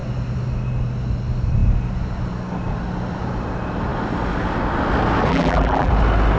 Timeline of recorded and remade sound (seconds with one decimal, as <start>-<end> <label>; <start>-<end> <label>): 0.0-5.3 recorded; 5.3-5.9 remade; 5.9-6.4 recorded